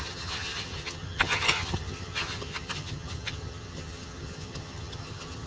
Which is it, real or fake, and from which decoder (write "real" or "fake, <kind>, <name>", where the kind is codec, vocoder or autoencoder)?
fake, vocoder, HiFi-GAN